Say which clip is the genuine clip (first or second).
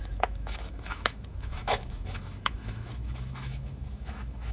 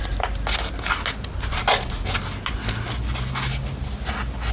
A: second